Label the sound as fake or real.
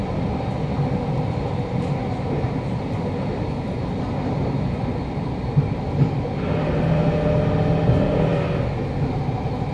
real